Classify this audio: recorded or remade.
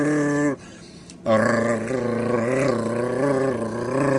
recorded